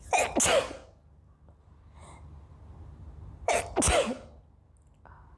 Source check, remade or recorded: recorded